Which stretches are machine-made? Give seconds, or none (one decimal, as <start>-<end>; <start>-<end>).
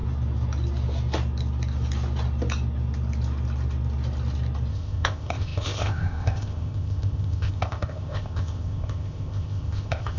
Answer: 4.7-10.2